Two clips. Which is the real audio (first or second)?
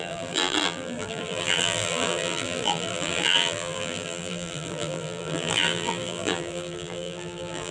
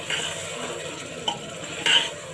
second